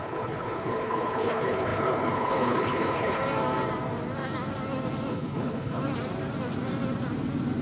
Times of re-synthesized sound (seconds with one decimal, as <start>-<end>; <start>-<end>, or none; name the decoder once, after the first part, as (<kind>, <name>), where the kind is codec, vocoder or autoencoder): 0.0-3.2 (codec, HILCodec); 5.1-5.8